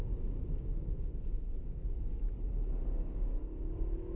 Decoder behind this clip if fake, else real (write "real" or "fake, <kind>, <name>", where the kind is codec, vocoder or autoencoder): real